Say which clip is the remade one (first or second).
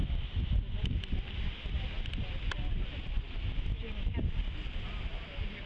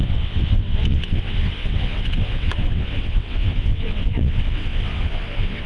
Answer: second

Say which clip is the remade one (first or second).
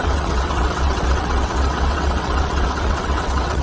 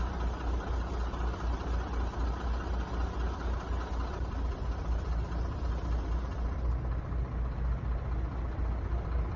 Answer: first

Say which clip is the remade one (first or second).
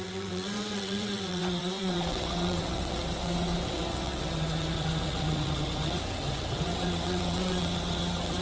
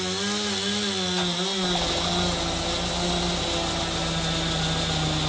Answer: first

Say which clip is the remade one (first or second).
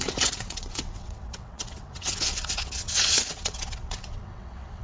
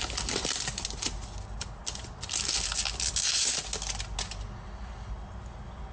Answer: first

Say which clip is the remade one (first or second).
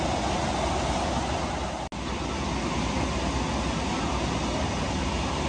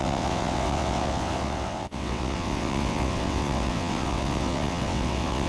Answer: second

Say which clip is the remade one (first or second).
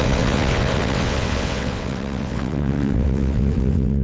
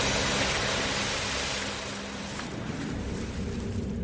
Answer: first